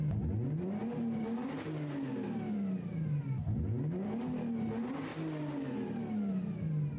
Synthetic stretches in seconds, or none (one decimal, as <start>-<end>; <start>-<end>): none